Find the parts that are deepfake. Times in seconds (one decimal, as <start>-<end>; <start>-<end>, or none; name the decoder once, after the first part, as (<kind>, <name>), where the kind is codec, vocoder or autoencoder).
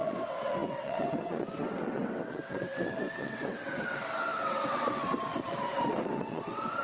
0.0-6.8 (vocoder, WaveNeXt)